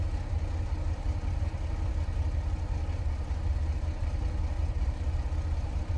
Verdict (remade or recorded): recorded